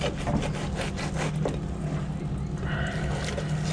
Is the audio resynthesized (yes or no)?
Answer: no